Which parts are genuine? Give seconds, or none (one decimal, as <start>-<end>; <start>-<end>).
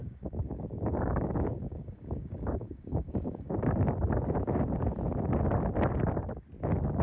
3.5-7.0